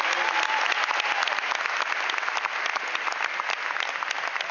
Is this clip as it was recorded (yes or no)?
yes